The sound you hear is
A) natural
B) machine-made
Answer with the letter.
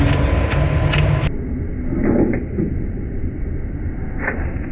A